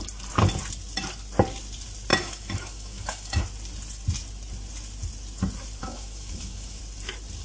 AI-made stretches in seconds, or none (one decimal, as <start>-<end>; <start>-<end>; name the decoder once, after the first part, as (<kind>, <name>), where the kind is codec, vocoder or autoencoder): 2.1-3.4 (autoencoder, DAC-VAE); 5.8-6.8

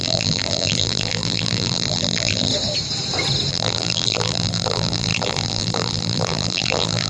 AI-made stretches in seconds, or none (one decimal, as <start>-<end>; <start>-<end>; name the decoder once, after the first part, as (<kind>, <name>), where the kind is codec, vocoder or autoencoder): 0.0-2.5 (vocoder, BigVGAN v2); 3.5-7.1

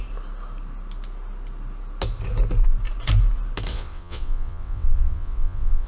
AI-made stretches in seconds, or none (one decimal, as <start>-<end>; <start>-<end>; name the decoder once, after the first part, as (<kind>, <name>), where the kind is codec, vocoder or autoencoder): 3.7-5.9 (vocoder, WaveNeXt)

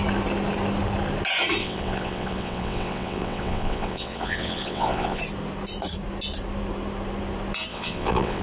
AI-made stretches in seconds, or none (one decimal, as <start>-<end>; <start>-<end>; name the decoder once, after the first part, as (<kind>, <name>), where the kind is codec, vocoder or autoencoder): 1.6-5.2 (vocoder, WaveNeXt); 7.7-8.4

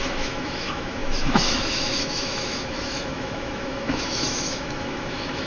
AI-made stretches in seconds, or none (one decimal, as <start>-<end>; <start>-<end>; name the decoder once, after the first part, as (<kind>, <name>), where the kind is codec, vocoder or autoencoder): 0.0-5.5 (autoencoder, DAC-VAE)

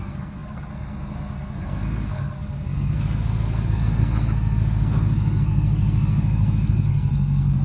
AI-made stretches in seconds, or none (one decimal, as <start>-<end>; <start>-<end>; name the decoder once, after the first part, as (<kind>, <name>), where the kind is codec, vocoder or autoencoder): 0.0-7.6 (codec, SNAC)

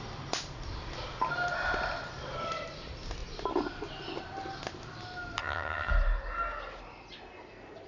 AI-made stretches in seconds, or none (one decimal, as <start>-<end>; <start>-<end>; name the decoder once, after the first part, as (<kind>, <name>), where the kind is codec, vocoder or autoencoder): 5.4-5.9 (vocoder, HiFi-GAN)

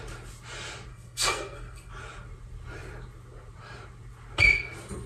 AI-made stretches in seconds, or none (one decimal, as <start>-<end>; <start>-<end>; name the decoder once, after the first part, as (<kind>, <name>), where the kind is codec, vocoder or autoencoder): 0.9-1.9 (codec, SNAC)